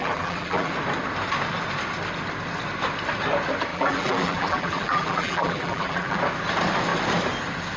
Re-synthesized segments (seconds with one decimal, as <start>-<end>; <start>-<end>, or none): 0.0-0.7; 3.7-6.2